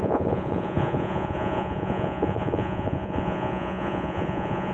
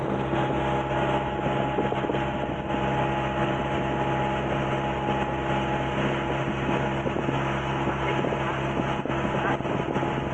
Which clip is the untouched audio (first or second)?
second